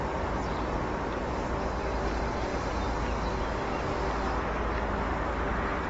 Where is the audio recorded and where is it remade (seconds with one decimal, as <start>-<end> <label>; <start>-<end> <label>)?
0.0-5.9 recorded